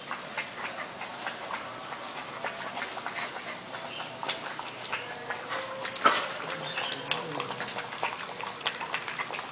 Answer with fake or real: real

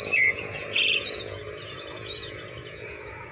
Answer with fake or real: fake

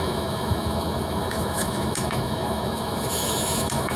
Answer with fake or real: fake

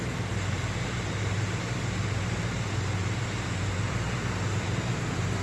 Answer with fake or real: fake